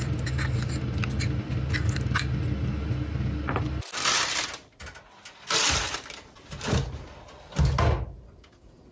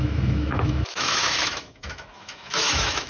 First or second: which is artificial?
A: second